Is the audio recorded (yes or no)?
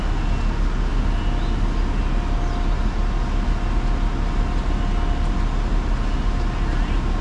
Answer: yes